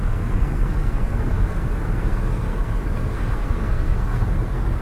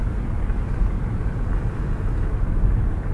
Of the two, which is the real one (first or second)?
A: second